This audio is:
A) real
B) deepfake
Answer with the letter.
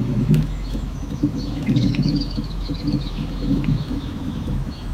B